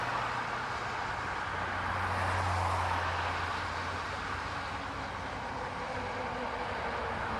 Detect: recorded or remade recorded